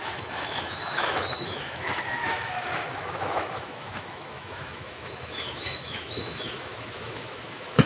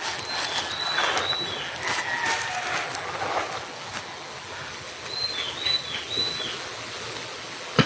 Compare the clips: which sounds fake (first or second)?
first